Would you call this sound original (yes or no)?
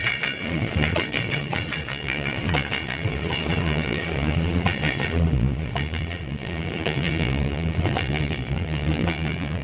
no